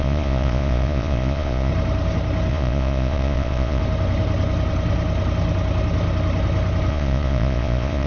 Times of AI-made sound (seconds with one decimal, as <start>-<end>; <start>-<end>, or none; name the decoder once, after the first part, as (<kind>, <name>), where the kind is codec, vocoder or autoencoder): 0.0-1.7 (vocoder, Vocos); 2.5-3.8; 6.9-8.1